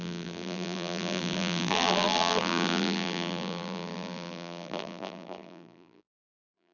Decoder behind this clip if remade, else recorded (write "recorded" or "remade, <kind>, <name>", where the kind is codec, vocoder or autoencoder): remade, vocoder, BigVGAN v2